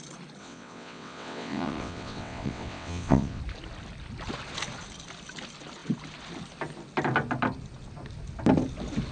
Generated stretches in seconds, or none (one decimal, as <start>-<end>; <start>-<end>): 0.4-3.4